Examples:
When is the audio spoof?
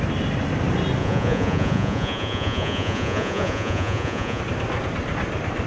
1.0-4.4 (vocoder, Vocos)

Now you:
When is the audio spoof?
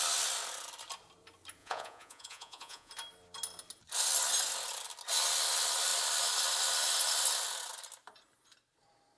1.6-2.9 (vocoder, Vocos)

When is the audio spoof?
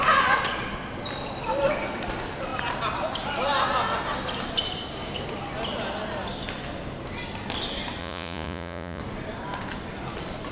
8.0-9.0 (vocoder, Vocos)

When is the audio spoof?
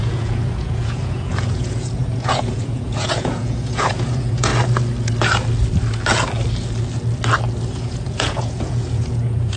0.0-4.5 (vocoder, Vocos); 7.7-9.6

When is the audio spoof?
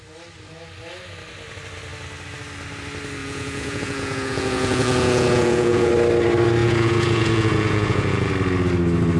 3.2-5.9 (vocoder, Vocos); 6.6-8.3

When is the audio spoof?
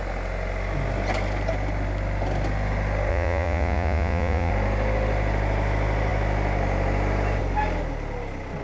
3.1-4.5 (vocoder, Vocos)